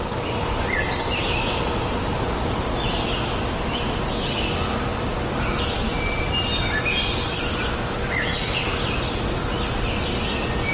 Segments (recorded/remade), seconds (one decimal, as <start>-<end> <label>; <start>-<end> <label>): 0.0-10.7 recorded